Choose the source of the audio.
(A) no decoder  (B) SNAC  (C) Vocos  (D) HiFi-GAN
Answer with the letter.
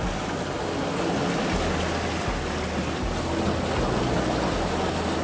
A